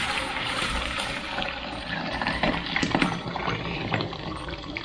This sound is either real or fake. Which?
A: fake